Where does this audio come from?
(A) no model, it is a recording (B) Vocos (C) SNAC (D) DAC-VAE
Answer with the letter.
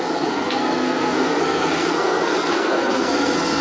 C